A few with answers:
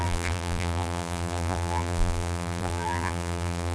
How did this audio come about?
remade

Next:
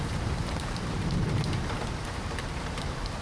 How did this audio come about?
remade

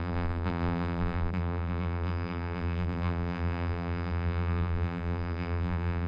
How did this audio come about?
remade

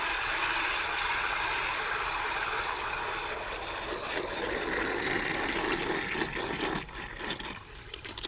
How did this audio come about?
recorded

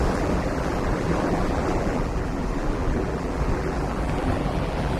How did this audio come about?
remade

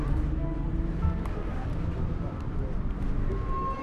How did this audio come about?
recorded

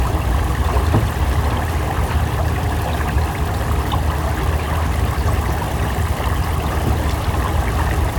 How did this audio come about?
recorded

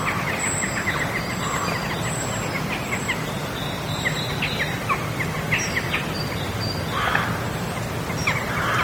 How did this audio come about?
recorded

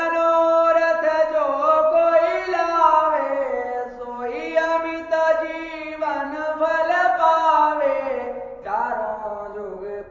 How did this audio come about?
remade